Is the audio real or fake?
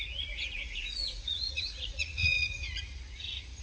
fake